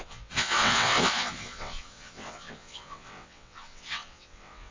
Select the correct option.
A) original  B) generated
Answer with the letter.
B